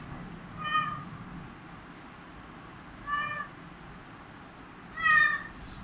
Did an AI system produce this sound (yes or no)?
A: no